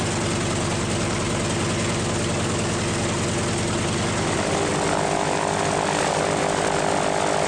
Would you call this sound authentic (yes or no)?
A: yes